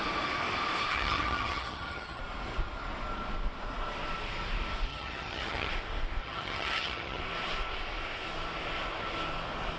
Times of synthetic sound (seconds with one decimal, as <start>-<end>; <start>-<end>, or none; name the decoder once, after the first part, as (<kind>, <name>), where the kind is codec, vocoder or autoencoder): 0.9-2.2 (vocoder, HiFi-GAN); 4.9-5.7; 6.2-7.2